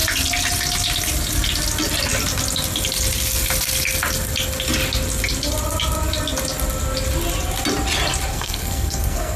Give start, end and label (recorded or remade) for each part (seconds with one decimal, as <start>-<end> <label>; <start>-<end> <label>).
0.0-8.3 recorded; 8.3-9.4 remade